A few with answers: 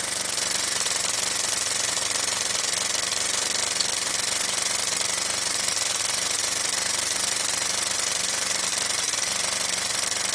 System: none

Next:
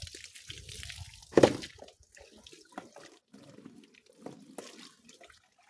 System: none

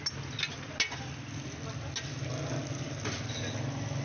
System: none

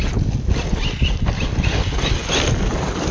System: none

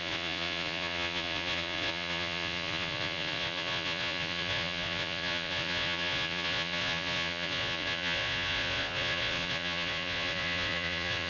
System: vocoder, Vocos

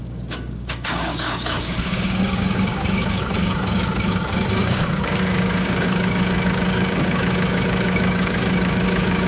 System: codec, DAC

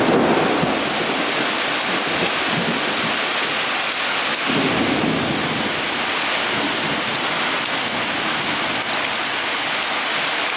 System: none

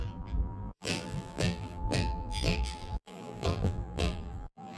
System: vocoder, BigVGAN v2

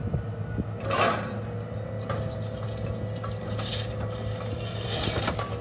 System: none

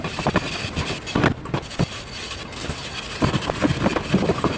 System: none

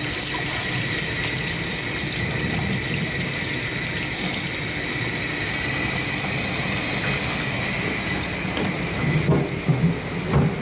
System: none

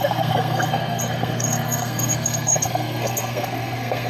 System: codec, SNAC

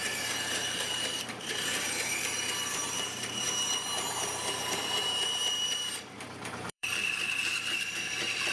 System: vocoder, BigVGAN v2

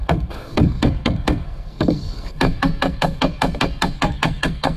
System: codec, SNAC